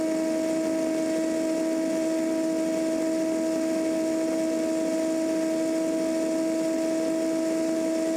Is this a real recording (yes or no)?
yes